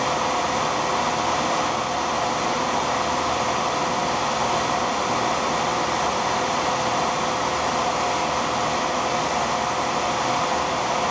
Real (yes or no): yes